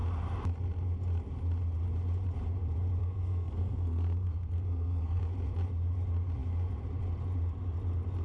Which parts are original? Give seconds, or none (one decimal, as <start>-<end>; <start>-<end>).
0.0-3.0; 5.2-8.2